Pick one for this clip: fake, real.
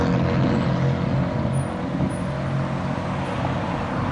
real